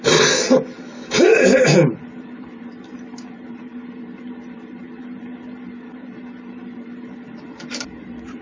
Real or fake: fake